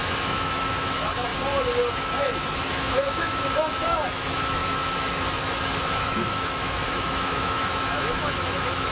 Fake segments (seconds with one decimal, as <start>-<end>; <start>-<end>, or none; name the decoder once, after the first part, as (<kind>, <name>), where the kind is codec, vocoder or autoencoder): 0.0-1.3 (autoencoder, DAC-VAE); 1.9-8.9